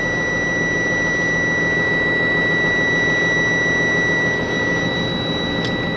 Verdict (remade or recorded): recorded